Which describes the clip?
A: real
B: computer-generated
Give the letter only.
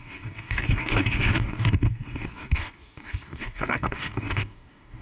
B